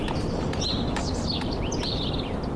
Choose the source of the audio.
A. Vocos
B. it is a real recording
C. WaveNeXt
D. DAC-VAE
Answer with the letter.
B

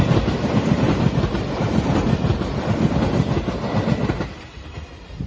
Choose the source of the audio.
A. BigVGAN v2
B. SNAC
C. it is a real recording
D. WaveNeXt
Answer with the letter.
C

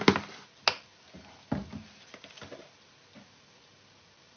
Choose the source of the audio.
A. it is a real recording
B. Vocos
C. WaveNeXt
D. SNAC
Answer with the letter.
A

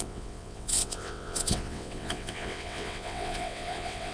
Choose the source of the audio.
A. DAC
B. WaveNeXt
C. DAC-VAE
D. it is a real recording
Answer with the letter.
B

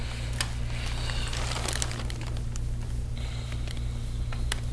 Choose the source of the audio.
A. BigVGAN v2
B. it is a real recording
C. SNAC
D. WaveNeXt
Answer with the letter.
B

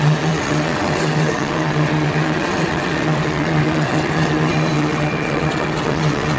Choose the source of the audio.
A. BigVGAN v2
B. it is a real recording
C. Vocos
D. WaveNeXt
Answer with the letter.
D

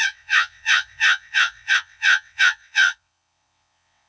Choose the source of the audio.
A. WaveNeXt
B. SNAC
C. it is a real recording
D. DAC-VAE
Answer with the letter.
A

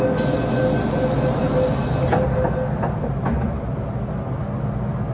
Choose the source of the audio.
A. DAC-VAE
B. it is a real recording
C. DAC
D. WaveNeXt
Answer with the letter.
B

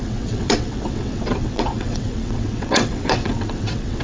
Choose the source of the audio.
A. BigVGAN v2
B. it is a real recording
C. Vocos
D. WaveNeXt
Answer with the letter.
D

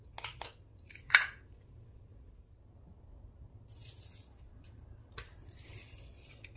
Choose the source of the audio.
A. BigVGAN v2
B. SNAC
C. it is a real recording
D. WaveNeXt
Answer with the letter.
C